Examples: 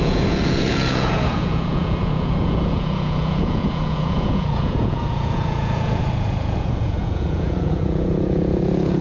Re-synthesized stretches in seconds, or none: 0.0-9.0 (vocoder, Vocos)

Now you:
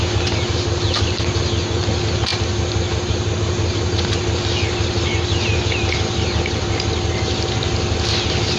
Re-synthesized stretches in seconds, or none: none

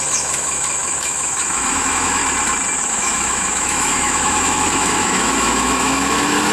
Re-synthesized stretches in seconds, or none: 0.0-2.2 (autoencoder, DAC-VAE); 2.9-6.5

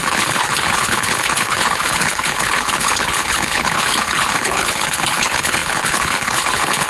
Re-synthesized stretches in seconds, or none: 0.0-6.9 (codec, HILCodec)

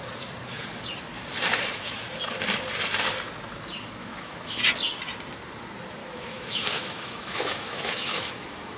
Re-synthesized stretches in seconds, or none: 4.0-4.6 (autoencoder, DAC-VAE); 6.0-8.8

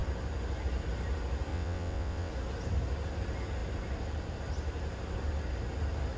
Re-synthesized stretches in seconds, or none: 1.5-2.3 (vocoder, WaveNeXt)

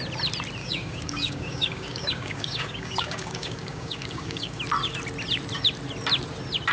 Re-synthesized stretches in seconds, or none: 0.6-4.6 (codec, DAC)

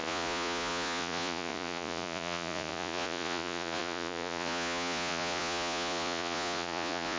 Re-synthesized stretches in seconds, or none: 0.0-7.2 (vocoder, Vocos)